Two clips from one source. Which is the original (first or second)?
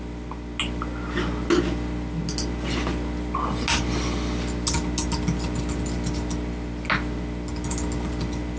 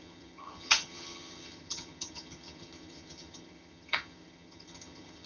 first